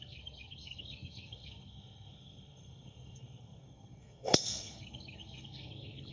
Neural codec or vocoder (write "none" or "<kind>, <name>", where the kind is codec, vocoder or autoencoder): codec, SNAC